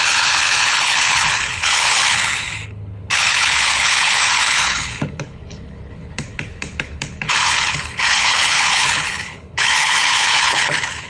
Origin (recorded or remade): remade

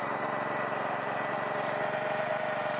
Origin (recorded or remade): recorded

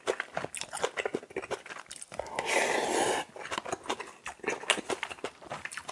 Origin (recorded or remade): recorded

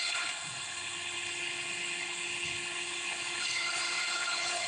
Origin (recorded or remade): remade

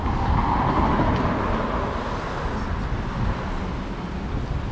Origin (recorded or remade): recorded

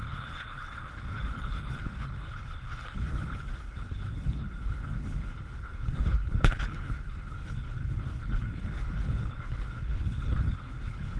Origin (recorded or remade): remade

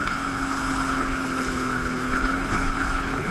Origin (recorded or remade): remade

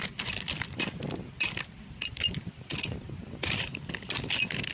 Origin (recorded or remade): recorded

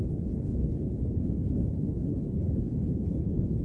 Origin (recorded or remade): remade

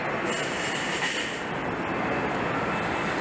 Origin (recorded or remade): recorded